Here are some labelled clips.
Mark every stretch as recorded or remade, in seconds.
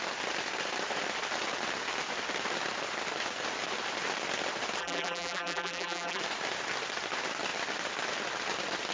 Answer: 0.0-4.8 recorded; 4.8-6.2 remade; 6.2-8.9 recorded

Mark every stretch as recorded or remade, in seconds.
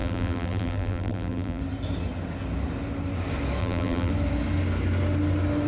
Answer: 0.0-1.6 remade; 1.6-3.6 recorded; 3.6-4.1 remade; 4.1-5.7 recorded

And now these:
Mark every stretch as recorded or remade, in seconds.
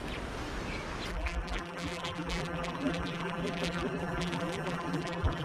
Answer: 0.0-1.1 recorded; 1.1-5.4 remade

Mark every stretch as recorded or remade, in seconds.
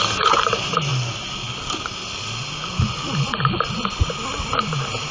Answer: 0.0-0.9 remade; 0.9-1.6 recorded; 1.6-2.0 remade; 2.0-5.1 recorded